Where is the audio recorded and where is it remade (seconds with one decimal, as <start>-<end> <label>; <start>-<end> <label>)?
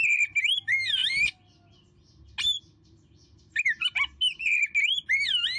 0.0-5.6 recorded